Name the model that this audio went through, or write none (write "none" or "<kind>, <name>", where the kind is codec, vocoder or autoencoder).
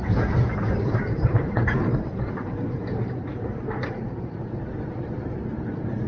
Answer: vocoder, BigVGAN v2